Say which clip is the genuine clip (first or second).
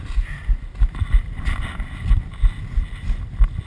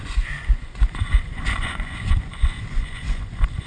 first